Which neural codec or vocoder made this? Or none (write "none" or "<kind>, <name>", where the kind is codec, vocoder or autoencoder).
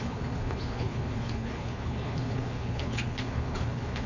codec, HILCodec